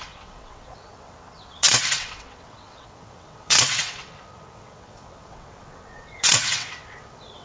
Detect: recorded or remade remade